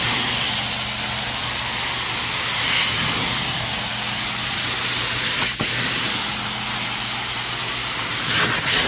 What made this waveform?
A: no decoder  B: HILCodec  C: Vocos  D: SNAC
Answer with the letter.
A